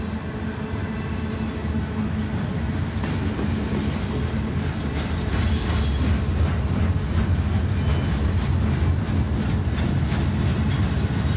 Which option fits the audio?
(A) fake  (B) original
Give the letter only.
B